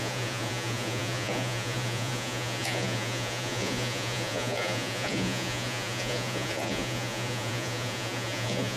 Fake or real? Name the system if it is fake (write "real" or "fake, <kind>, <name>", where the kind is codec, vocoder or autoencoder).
fake, vocoder, Vocos